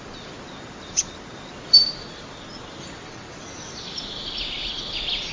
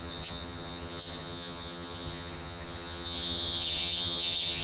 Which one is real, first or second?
first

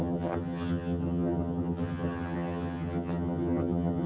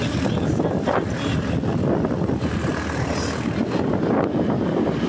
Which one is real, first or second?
second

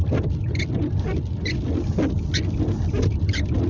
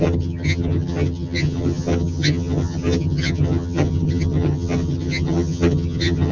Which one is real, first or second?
first